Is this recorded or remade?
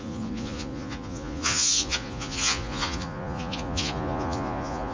remade